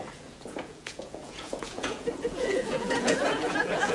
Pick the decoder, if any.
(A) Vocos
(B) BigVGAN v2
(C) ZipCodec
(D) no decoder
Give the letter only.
A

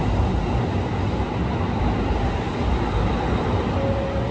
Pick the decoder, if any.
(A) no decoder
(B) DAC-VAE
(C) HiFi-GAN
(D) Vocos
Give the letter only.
A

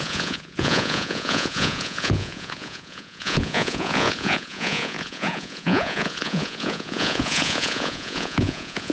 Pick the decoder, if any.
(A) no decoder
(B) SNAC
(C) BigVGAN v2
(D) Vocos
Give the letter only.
D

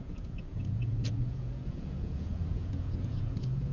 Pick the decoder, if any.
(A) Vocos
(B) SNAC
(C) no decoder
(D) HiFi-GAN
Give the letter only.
A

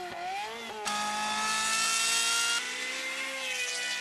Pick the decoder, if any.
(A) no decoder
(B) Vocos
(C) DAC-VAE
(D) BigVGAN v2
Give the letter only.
A